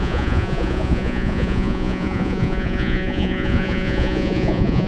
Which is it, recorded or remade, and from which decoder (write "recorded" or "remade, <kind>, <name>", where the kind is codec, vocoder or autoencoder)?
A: remade, vocoder, Vocos